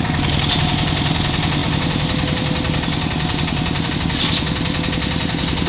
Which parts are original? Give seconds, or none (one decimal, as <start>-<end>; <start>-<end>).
0.0-5.7